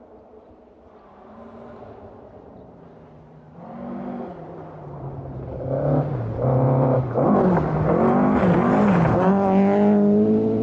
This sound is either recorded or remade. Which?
recorded